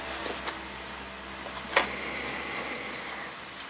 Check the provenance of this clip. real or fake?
real